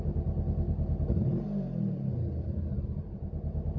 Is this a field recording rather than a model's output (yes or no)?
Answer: yes